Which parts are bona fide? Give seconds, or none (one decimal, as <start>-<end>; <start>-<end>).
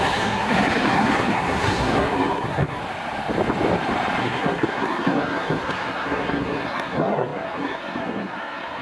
2.8-4.2